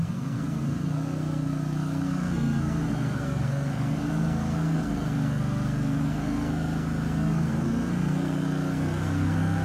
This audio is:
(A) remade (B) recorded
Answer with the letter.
A